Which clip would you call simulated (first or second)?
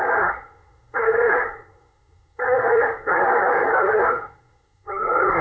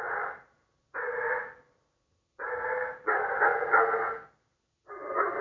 first